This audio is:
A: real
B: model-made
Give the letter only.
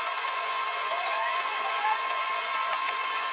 B